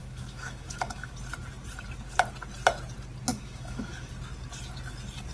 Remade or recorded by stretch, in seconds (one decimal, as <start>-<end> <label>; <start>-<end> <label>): 0.0-1.1 remade; 1.1-3.3 recorded; 3.3-4.1 remade; 4.1-5.3 recorded